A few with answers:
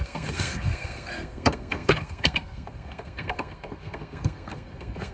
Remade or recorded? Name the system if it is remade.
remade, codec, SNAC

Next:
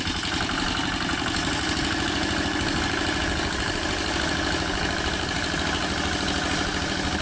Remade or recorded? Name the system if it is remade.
recorded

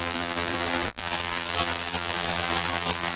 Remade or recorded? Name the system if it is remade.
remade, vocoder, BigVGAN v2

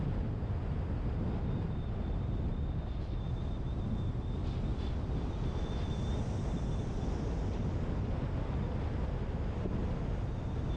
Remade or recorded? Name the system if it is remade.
recorded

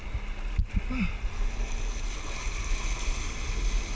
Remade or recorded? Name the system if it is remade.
recorded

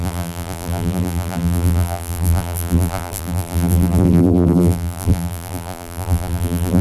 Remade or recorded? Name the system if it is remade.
remade, vocoder, BigVGAN v2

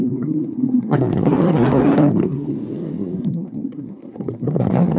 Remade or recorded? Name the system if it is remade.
remade, codec, SNAC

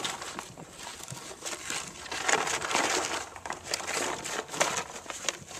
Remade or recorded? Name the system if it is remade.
recorded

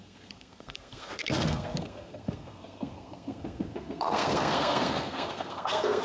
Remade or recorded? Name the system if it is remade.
remade, codec, SNAC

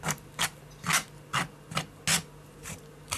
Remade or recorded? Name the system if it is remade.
recorded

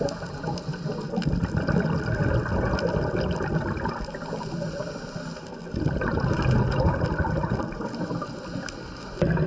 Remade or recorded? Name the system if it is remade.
recorded